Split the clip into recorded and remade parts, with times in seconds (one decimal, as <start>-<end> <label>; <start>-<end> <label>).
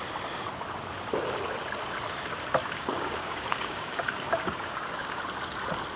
0.0-2.6 recorded; 2.6-5.2 remade; 5.2-6.0 recorded